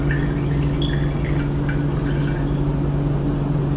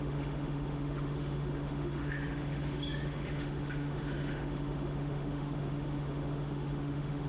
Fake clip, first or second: second